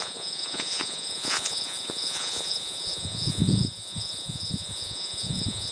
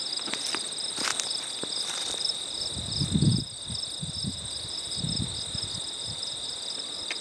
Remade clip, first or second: first